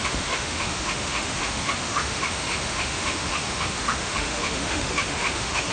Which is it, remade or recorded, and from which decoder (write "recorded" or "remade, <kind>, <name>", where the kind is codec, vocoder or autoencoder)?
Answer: remade, autoencoder, DAC-VAE